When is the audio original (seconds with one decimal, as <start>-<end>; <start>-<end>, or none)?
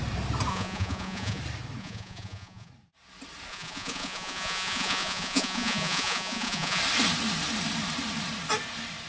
0.0-0.5; 1.4-1.8; 2.7-3.5; 6.8-9.1